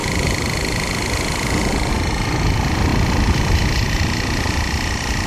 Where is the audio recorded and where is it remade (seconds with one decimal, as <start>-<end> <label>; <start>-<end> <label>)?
0.0-5.3 recorded